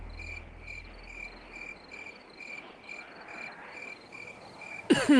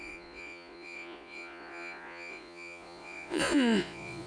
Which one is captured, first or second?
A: first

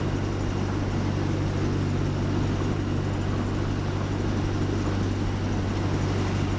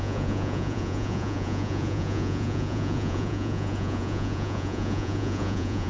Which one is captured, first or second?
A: first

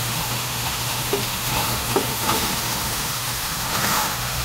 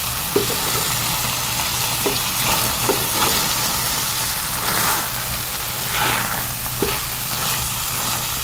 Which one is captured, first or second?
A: second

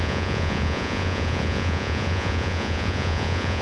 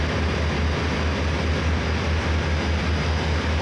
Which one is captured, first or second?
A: second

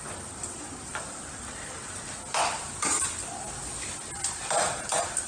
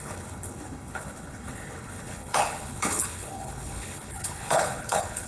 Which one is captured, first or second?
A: first